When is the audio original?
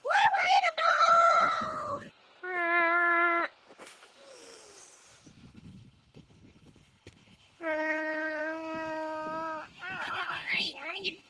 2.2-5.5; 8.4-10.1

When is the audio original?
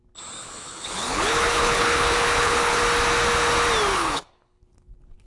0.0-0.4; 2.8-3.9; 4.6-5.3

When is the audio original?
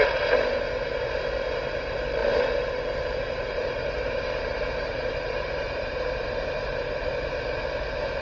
0.0-2.2; 7.1-8.2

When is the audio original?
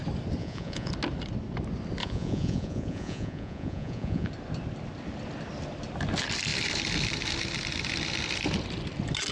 0.0-0.4; 0.9-2.0; 4.3-9.3